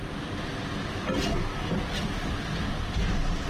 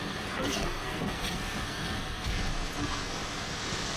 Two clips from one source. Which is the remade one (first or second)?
second